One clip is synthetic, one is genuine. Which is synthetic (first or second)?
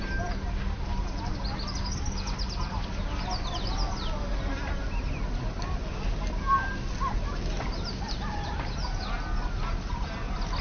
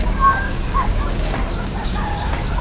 second